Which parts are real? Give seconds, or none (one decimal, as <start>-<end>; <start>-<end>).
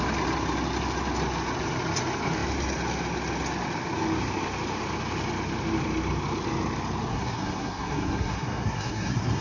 0.0-7.1